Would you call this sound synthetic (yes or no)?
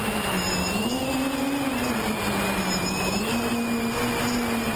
no